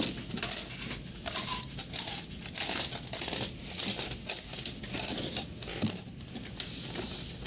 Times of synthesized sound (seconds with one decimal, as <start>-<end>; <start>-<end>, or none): none